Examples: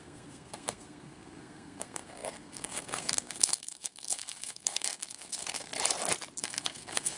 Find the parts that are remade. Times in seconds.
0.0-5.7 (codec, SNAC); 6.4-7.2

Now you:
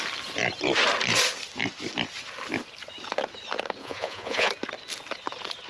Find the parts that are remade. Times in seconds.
3.8-4.5 (vocoder, Vocos)

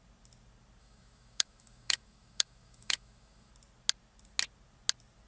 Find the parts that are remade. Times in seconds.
0.8-3.5 (autoencoder, DAC-VAE)

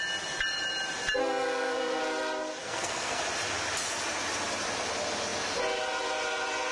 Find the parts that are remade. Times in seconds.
1.2-2.0 (codec, SNAC); 2.6-3.2

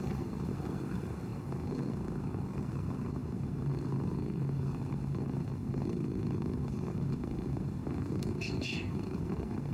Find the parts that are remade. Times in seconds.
0.0-9.7 (codec, SNAC)

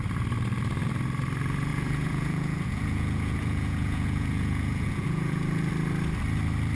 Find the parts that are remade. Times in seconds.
1.7-5.7 (vocoder, Vocos)